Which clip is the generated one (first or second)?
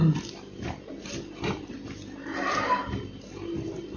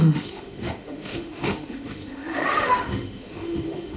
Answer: second